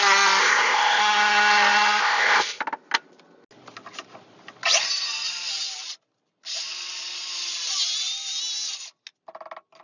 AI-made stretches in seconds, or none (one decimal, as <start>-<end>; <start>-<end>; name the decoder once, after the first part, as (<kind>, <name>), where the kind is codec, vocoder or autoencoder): 0.4-1.0 (codec, ZipCodec); 2.0-2.6